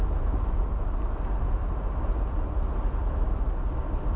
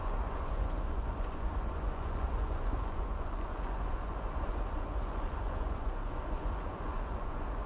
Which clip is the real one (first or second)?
first